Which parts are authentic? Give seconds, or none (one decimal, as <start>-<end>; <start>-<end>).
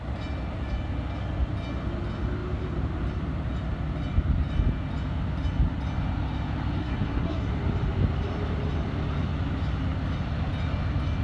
0.0-6.8; 7.5-11.2